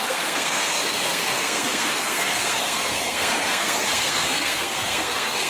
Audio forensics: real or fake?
fake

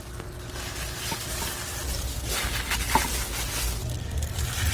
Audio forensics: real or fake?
real